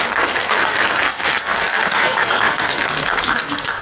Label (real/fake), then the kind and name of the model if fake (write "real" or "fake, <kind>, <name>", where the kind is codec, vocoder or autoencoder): fake, codec, SNAC